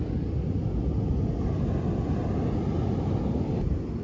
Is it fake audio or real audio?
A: real